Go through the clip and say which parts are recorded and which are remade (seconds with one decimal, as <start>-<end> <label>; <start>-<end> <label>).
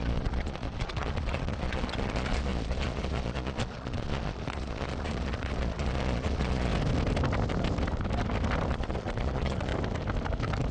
0.0-6.7 remade; 6.7-8.7 recorded; 8.7-9.7 remade; 9.7-10.7 recorded